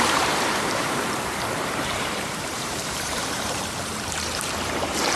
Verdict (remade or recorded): remade